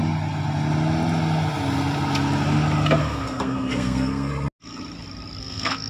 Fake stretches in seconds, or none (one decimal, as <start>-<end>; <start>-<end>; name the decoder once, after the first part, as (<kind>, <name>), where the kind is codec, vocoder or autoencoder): 3.0-4.3 (codec, SNAC); 5.4-5.9